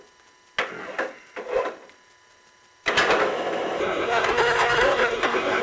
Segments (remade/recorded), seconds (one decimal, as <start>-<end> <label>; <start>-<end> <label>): 0.0-3.8 recorded; 3.8-5.6 remade